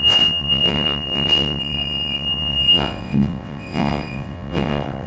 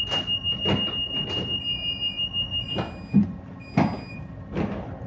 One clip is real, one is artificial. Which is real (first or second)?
second